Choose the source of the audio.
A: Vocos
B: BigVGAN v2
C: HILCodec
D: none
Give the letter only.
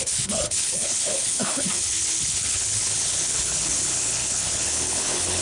C